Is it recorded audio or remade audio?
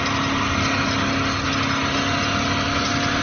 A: recorded